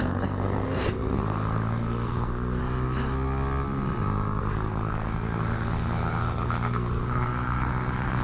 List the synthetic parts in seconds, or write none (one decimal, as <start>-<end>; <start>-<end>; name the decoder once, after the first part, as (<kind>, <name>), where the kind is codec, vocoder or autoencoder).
0.0-2.6 (codec, SNAC); 4.4-8.2